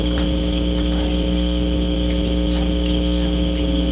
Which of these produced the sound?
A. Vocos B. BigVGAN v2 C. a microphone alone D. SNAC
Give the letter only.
C